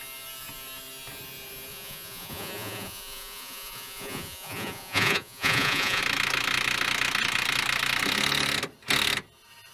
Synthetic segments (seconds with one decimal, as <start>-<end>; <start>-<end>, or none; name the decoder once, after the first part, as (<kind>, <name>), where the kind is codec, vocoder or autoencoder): 1.7-6.0 (vocoder, Vocos)